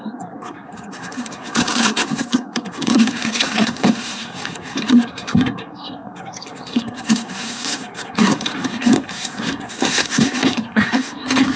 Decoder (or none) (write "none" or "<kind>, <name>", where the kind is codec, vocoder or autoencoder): codec, SNAC